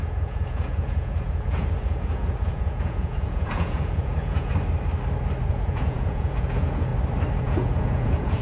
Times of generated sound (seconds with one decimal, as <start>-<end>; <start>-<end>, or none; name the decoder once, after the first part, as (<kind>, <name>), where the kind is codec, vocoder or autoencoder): 0.0-4.5 (vocoder, Vocos); 5.5-6.9; 7.4-8.4

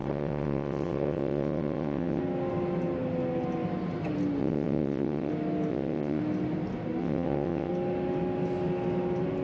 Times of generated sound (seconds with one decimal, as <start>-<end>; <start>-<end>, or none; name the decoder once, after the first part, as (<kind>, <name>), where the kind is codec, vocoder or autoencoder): 0.0-2.2 (vocoder, WaveNeXt); 4.4-5.3; 5.7-6.2; 7.0-7.7